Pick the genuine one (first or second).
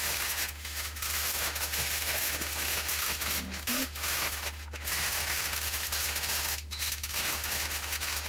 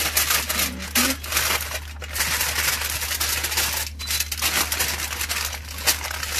second